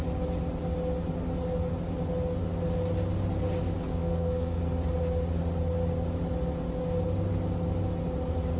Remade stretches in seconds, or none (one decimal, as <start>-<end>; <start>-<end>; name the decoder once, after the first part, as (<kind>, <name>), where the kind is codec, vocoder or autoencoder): 4.0-4.6 (codec, SNAC)

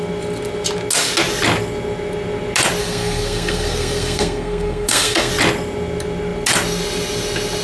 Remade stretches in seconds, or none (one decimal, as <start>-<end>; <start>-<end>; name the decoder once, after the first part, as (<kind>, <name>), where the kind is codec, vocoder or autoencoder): 2.8-5.3 (codec, SNAC)

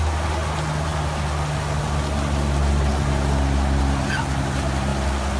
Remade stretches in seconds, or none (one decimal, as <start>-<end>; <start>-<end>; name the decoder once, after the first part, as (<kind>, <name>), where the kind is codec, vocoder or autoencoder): none